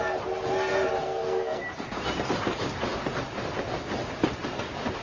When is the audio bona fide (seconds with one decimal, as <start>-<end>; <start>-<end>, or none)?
0.0-1.0; 1.6-5.0